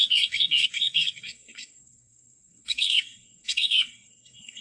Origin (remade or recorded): remade